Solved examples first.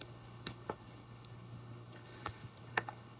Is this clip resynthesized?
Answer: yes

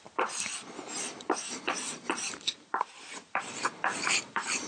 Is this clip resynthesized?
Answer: yes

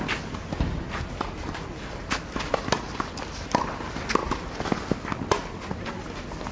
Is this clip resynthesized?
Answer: no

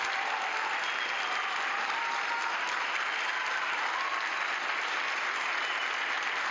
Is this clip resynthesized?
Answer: no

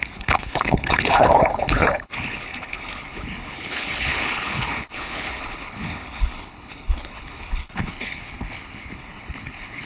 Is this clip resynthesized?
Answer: yes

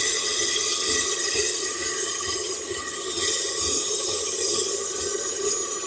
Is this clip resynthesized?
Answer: yes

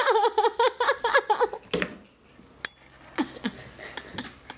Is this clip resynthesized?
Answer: no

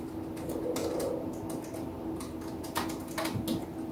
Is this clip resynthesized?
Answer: no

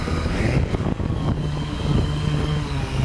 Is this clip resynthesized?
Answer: yes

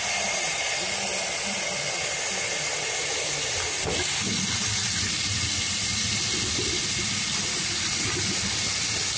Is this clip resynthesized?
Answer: no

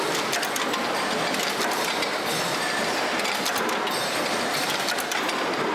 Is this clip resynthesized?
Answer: no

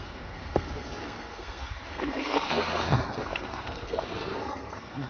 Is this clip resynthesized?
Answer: yes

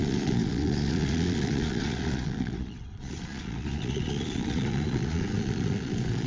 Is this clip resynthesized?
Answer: yes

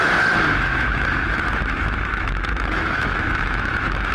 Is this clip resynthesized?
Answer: yes